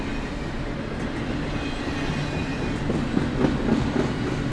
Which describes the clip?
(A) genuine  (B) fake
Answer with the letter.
A